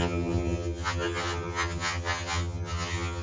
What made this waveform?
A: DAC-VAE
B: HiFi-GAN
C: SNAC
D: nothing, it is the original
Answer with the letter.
B